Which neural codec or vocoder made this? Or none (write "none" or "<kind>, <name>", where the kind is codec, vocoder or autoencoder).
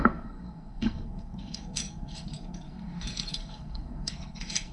codec, SNAC